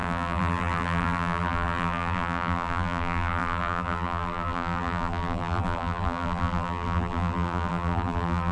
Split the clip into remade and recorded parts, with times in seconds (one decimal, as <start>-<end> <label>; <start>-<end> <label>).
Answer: 0.0-8.5 remade